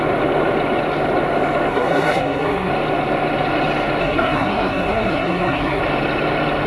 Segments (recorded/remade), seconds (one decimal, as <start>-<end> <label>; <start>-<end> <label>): 0.0-1.7 recorded; 1.7-2.7 remade; 2.7-4.0 recorded; 4.0-5.8 remade; 5.8-6.7 recorded